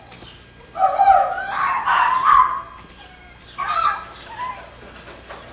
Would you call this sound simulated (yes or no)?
no